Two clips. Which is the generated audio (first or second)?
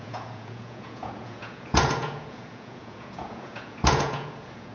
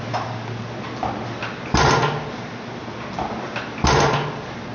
first